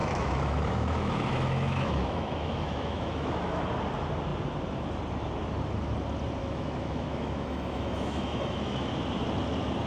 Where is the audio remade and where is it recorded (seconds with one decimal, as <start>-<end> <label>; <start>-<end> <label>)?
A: 0.0-3.6 remade; 3.6-6.4 recorded; 6.4-8.9 remade; 8.9-9.9 recorded